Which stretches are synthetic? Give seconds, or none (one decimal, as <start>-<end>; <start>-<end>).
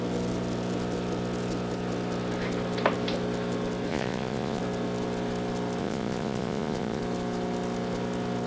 3.9-4.6; 5.8-7.0